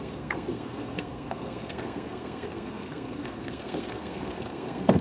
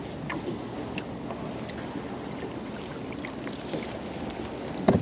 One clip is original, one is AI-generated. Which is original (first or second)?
second